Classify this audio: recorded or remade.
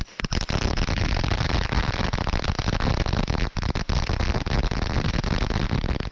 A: recorded